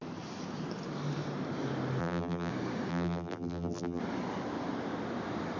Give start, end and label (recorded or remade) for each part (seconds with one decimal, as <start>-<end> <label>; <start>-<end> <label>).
0.0-2.0 recorded; 2.0-2.5 remade; 2.5-2.9 recorded; 2.9-4.0 remade; 4.0-5.6 recorded